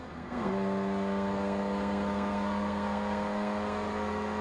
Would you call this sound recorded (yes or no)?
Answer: no